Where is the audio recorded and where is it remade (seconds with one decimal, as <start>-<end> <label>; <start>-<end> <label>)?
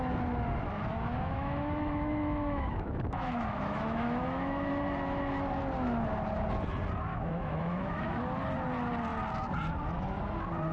0.0-0.9 recorded; 0.9-4.7 remade; 4.7-7.1 recorded; 7.1-8.2 remade; 8.2-10.7 recorded